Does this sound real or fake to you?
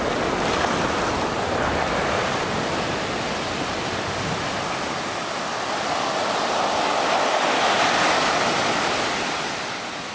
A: real